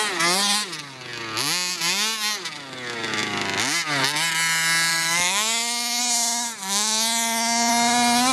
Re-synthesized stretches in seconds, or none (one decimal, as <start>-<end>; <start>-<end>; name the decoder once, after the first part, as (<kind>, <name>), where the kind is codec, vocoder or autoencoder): 4.9-6.0 (autoencoder, DAC-VAE); 6.6-7.7